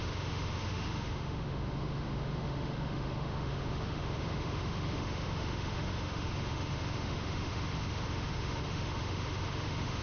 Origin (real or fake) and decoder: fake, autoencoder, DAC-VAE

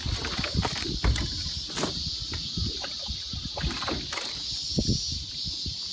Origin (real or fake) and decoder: real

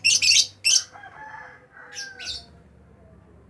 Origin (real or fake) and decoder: real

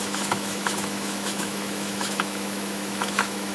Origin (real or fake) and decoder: fake, autoencoder, DAC-VAE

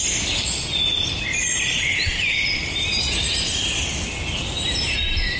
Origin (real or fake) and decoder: real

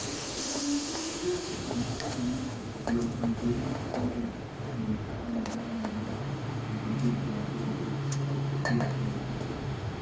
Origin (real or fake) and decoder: fake, autoencoder, DAC-VAE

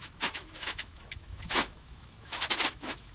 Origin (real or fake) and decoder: fake, autoencoder, DAC-VAE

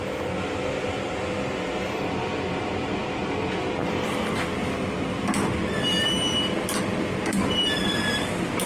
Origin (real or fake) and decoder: real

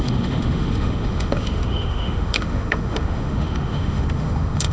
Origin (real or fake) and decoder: fake, autoencoder, DAC-VAE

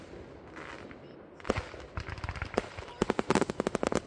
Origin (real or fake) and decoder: real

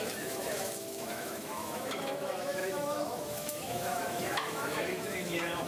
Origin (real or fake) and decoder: fake, autoencoder, DAC-VAE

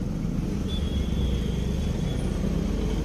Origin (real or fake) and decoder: real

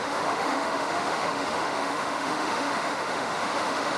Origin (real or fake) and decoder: fake, autoencoder, DAC-VAE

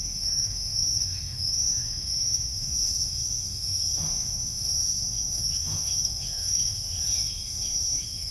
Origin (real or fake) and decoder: fake, autoencoder, DAC-VAE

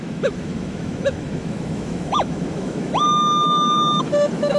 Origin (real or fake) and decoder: fake, autoencoder, DAC-VAE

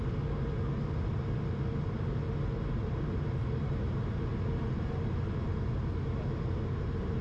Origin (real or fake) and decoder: real